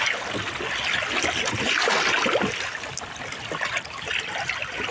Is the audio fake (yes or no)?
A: no